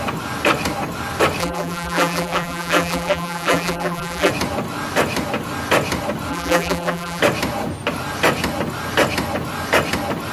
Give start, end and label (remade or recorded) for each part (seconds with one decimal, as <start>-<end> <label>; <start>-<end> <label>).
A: 0.0-1.4 recorded; 1.4-4.3 remade; 4.3-6.3 recorded; 6.3-7.2 remade; 7.2-10.3 recorded